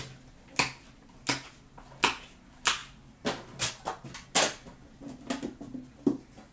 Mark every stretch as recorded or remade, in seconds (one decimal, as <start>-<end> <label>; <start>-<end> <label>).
0.0-6.5 recorded